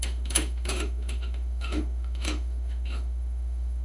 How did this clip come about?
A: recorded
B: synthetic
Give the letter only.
B